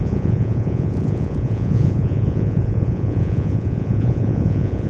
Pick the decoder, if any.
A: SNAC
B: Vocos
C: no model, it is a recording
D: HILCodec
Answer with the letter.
B